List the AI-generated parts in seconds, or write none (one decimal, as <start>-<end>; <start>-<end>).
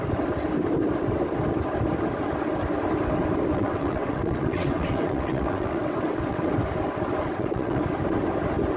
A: 3.5-6.5; 7.2-7.8